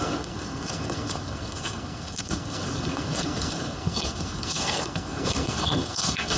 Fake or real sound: fake